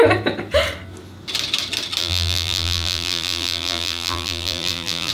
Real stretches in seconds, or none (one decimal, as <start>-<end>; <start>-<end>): 0.0-2.0